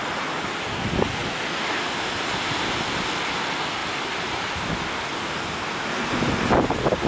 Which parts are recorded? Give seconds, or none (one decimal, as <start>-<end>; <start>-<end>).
0.0-3.8; 5.5-7.1